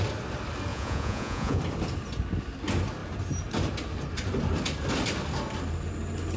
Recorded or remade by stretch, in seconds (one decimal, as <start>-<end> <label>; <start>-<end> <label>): 0.0-0.7 recorded; 0.7-1.6 remade; 1.6-6.4 recorded